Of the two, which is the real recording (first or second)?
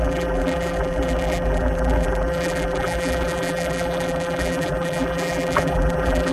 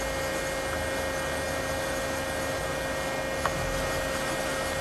second